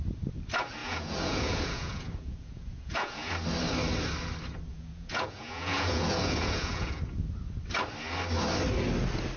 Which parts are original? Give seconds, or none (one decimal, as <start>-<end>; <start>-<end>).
0.0-0.8; 3.3-4.7; 7.0-9.4